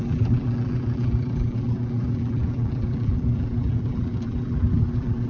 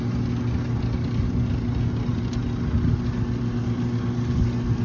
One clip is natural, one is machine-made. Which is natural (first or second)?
second